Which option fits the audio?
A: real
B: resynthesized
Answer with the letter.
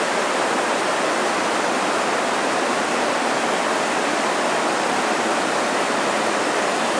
B